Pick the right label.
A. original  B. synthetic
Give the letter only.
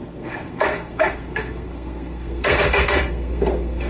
B